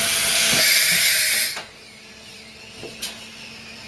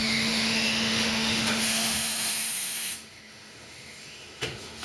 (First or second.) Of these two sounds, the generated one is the second